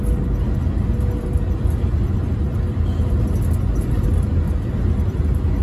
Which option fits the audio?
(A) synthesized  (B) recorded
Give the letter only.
B